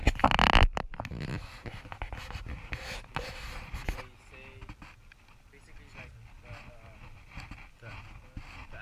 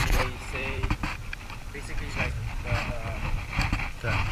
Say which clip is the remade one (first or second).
second